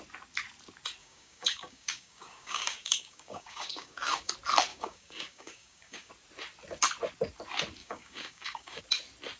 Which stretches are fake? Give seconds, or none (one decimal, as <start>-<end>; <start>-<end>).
1.0-4.3; 4.7-6.1; 7.8-8.8